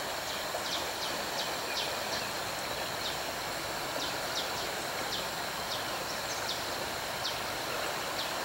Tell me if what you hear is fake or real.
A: real